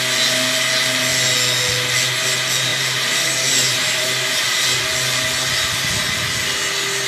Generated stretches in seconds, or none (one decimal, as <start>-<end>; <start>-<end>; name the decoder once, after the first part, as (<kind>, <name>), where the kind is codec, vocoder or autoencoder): 2.7-4.8 (vocoder, BigVGAN v2)